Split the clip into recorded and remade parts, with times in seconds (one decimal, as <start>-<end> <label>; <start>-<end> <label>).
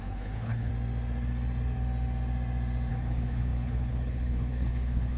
0.0-0.7 remade; 0.7-2.9 recorded; 2.9-5.2 remade